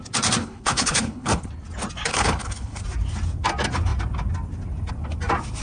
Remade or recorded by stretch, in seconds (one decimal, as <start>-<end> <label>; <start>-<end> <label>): 0.0-0.4 recorded; 0.4-1.5 remade; 1.5-2.1 recorded; 2.1-2.8 remade; 2.8-5.6 recorded